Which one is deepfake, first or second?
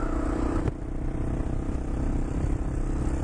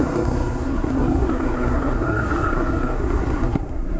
second